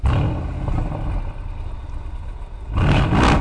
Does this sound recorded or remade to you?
recorded